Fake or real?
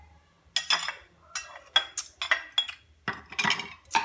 real